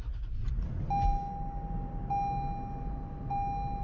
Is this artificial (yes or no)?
no